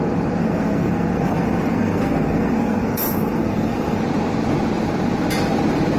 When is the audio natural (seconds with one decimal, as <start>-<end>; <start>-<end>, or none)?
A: 0.0-0.4; 4.0-6.0